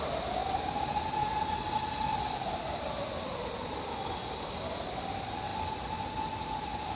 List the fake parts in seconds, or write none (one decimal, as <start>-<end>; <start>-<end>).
none